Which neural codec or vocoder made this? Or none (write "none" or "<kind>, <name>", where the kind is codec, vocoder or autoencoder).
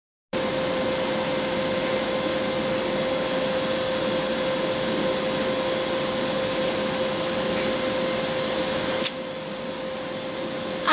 none